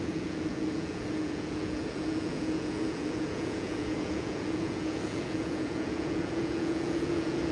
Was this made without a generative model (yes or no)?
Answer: no